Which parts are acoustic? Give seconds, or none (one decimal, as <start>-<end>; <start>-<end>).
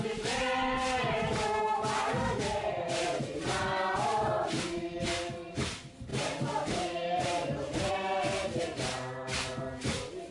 0.0-0.8; 3.5-6.1; 7.9-10.3